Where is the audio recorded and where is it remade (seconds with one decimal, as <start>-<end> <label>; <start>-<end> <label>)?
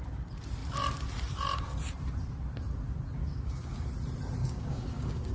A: 0.0-3.2 recorded; 3.2-3.9 remade; 3.9-4.4 recorded; 4.4-5.3 remade